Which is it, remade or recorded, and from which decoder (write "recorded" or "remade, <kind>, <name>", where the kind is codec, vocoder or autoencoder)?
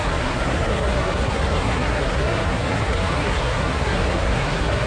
remade, codec, SNAC